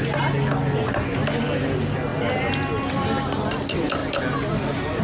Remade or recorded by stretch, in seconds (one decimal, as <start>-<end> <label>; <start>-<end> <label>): 0.0-5.0 recorded